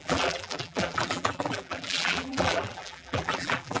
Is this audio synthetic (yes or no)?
yes